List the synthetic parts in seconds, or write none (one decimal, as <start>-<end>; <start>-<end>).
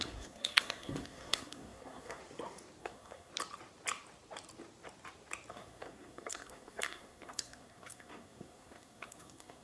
0.0-2.2; 2.8-3.3; 5.5-9.6